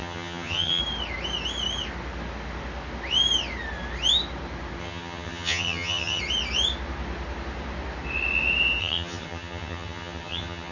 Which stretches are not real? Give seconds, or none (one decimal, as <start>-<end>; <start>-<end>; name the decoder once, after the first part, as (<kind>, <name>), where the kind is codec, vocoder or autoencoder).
0.0-0.8 (vocoder, HiFi-GAN); 4.8-6.2; 8.8-10.7